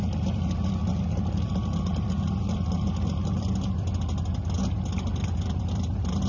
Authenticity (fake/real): real